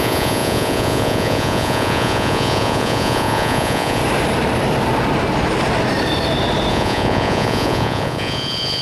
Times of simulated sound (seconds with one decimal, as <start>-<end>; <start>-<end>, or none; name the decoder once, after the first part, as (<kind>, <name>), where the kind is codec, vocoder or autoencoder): 0.0-4.0 (vocoder, Vocos); 6.7-8.8